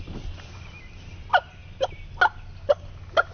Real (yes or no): yes